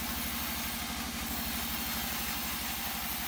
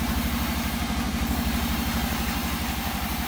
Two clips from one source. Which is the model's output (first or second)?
second